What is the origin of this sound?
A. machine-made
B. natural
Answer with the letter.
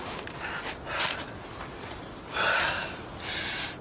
B